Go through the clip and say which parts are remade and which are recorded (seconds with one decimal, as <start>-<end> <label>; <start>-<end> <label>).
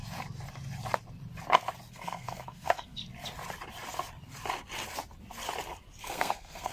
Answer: 0.0-1.9 recorded; 1.9-3.0 remade; 3.0-6.0 recorded; 6.0-6.7 remade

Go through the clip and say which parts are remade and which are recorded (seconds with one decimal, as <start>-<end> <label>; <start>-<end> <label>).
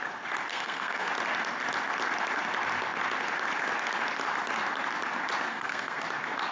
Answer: 0.0-0.5 recorded; 0.5-1.1 remade; 1.1-5.5 recorded; 5.5-6.0 remade; 6.0-6.5 recorded